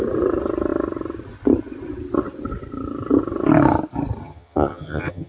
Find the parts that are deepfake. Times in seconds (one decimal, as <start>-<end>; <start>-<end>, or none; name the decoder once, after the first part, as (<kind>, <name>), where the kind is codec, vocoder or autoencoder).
4.2-5.3 (vocoder, HiFi-GAN)